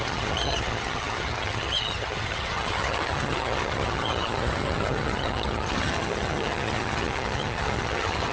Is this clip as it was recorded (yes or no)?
no